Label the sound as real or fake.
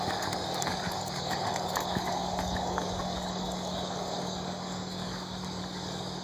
fake